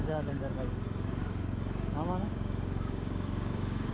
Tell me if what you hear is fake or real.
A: fake